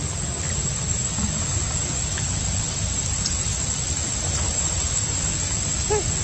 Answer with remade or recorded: recorded